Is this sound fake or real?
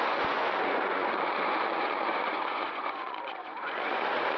fake